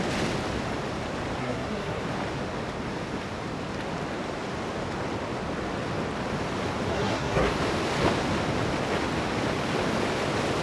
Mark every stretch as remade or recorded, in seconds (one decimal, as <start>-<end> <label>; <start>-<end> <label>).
0.0-1.4 recorded; 1.4-2.0 remade; 2.0-6.9 recorded; 6.9-7.5 remade; 7.5-10.6 recorded